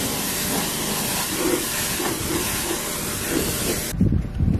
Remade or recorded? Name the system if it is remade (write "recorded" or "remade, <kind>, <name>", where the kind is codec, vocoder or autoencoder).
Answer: recorded